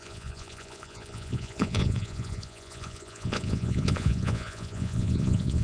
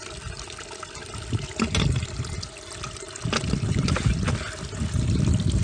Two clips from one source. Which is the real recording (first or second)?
second